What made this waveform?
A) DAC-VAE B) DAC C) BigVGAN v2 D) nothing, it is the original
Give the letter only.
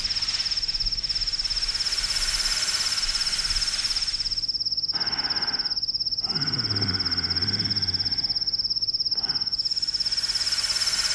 D